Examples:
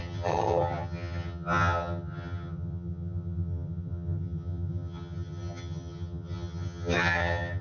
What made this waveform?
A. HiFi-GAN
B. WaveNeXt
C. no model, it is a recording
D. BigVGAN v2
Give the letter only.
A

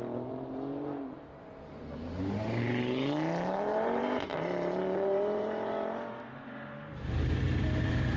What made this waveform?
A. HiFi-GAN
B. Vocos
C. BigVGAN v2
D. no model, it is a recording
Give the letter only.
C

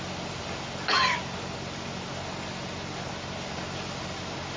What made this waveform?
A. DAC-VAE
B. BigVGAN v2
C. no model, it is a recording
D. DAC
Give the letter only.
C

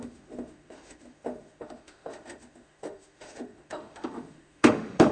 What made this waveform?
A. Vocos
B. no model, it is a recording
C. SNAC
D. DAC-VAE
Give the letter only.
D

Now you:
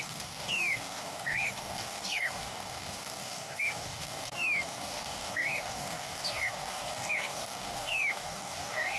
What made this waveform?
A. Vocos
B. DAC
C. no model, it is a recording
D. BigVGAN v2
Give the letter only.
B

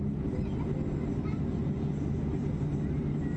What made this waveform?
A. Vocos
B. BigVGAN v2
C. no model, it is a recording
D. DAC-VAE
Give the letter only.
C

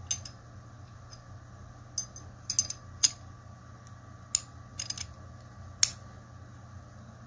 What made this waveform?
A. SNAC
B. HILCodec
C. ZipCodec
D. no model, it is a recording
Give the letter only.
D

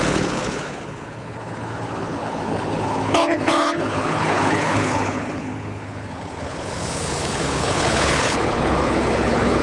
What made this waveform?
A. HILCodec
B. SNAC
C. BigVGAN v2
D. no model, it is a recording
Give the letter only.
A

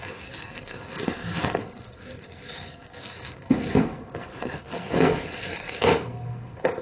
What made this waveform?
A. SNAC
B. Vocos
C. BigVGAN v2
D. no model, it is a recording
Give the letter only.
A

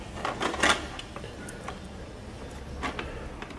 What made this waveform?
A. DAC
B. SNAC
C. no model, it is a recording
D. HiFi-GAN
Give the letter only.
C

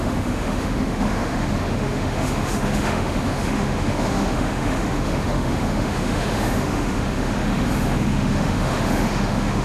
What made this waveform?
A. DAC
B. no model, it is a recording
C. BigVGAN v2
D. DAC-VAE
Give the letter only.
D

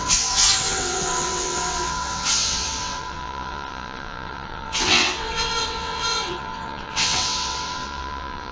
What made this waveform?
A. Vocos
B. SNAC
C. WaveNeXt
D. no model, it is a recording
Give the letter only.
C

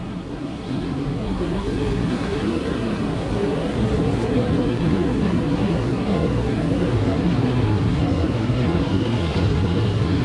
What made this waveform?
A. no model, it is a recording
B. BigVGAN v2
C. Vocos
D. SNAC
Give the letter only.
D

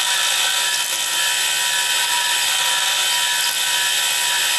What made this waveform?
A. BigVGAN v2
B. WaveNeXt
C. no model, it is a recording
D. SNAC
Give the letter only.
C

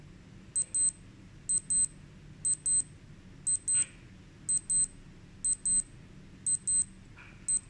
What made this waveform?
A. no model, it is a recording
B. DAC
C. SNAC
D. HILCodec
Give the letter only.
A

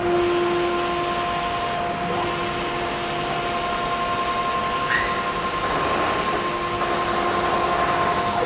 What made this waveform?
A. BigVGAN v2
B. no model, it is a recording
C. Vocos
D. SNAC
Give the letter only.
B